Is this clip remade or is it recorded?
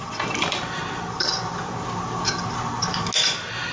recorded